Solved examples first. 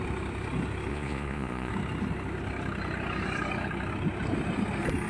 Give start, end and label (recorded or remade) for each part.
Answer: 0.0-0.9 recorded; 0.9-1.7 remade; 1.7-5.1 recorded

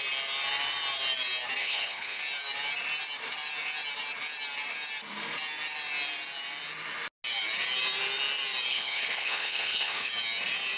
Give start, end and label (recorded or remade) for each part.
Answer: 0.0-1.6 recorded; 1.6-2.2 remade; 2.2-8.7 recorded; 8.7-10.1 remade; 10.1-10.8 recorded

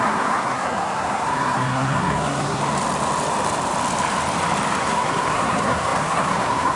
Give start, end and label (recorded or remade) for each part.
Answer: 0.0-2.6 remade; 2.6-4.8 recorded; 4.8-6.8 remade

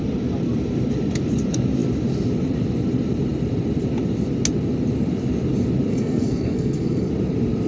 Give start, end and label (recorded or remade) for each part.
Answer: 0.0-5.9 recorded; 5.9-7.1 remade; 7.1-7.7 recorded

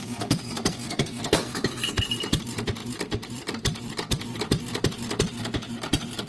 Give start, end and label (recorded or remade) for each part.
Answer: 0.0-2.1 remade; 2.1-6.3 recorded

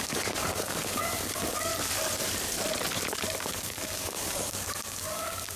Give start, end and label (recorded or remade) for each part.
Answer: 0.0-1.7 remade; 1.7-3.4 recorded; 3.4-5.6 remade

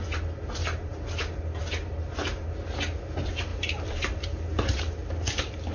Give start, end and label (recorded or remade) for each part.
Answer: 0.0-5.7 recorded

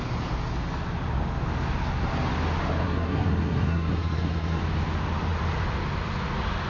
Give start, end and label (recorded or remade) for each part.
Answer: 0.0-2.8 recorded; 2.8-4.6 remade; 4.6-6.7 recorded